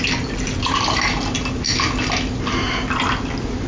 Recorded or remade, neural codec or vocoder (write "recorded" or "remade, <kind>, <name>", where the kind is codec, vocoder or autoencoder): recorded